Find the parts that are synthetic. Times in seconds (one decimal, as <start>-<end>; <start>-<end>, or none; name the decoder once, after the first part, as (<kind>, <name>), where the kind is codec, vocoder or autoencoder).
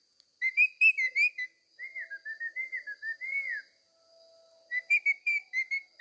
none